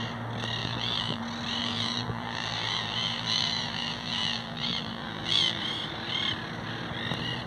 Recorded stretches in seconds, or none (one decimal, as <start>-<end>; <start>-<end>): 0.0-0.6; 1.2-1.6; 5.6-7.5